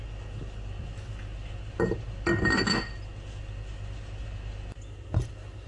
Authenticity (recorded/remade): recorded